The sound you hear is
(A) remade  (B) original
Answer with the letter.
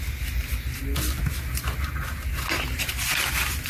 B